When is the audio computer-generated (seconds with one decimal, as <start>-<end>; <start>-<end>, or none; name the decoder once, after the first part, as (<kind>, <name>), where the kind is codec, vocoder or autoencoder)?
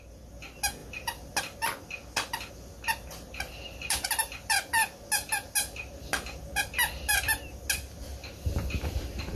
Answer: none